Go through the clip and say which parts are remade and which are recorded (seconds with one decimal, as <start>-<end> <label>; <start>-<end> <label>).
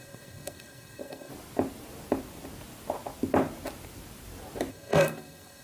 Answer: 0.0-1.3 remade; 1.3-4.7 recorded; 4.7-5.6 remade